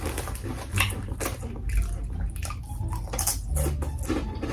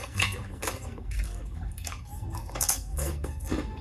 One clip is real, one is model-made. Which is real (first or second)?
first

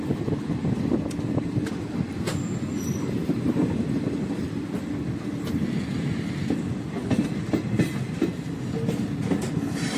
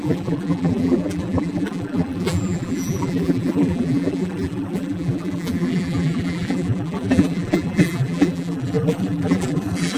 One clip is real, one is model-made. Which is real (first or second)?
first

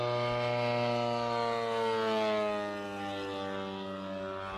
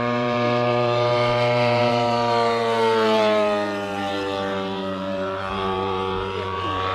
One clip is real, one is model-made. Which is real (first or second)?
first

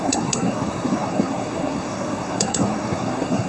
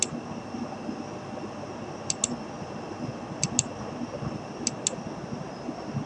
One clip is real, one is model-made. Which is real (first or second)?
second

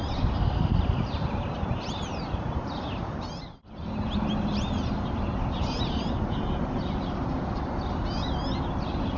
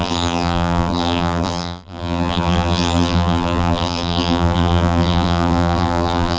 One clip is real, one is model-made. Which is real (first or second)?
first